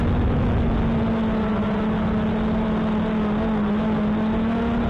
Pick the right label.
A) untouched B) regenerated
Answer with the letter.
A